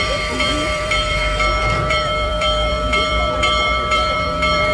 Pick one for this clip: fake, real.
fake